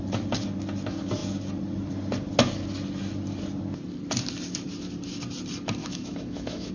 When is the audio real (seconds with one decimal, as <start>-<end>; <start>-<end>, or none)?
0.0-5.8